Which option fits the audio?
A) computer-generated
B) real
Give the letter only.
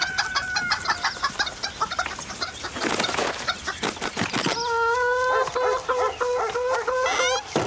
B